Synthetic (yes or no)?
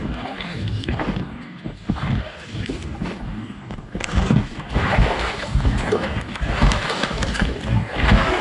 yes